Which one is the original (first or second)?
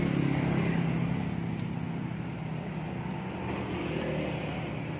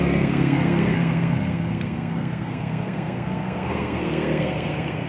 first